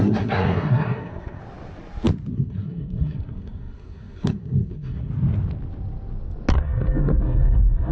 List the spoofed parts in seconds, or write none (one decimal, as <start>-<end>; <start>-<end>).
0.0-1.4; 2.3-5.1; 6.5-7.9